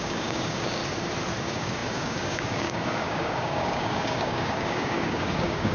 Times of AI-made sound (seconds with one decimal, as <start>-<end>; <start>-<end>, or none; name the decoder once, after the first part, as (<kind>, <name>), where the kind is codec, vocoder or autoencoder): 0.0-0.8 (codec, DAC); 1.4-5.7